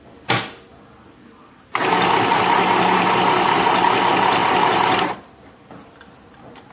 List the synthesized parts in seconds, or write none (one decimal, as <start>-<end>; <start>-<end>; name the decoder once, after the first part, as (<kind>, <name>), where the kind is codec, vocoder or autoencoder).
none